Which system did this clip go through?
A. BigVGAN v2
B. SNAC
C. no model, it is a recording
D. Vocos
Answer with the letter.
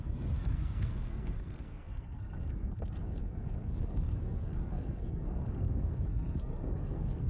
B